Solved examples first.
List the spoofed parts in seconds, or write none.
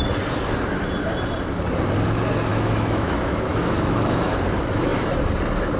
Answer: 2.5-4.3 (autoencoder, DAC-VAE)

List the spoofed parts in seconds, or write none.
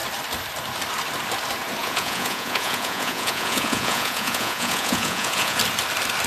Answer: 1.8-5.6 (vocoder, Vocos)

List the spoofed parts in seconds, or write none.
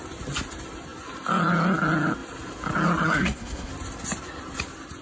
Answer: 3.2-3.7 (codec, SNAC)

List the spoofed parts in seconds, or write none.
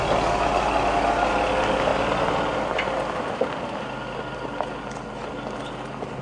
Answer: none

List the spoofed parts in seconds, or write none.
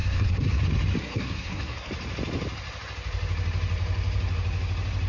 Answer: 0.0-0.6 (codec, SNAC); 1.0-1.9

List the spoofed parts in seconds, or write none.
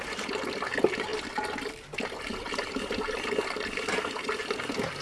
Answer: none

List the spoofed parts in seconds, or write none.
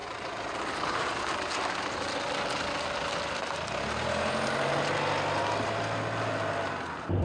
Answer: none